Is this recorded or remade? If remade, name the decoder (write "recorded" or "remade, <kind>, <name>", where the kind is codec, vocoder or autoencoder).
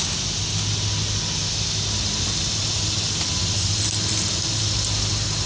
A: recorded